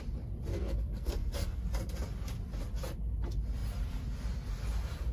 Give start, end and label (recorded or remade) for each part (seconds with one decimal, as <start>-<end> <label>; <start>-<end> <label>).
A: 0.0-0.5 recorded; 0.5-1.6 remade; 1.6-5.1 recorded